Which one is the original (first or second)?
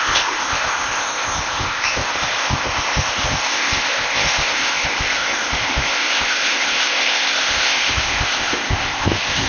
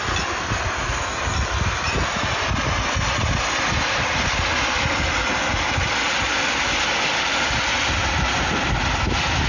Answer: second